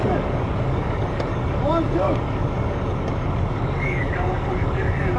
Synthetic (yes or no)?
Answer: yes